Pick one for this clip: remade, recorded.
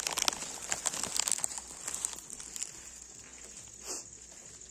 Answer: recorded